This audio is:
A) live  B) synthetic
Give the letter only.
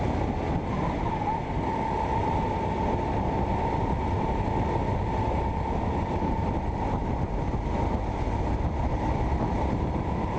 A